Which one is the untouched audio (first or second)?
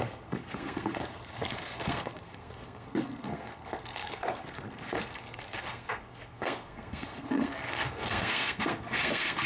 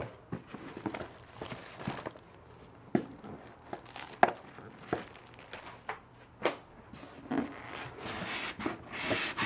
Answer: second